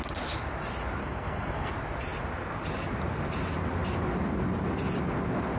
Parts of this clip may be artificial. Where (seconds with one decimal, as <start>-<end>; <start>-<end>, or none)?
1.0-1.7